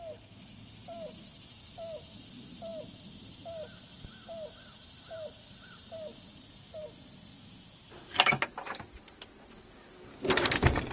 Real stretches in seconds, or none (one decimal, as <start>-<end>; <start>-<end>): 0.0-10.9